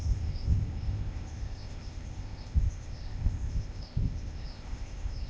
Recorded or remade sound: remade